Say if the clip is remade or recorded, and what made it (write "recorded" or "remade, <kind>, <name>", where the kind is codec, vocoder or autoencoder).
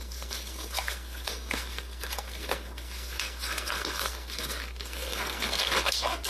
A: remade, codec, SNAC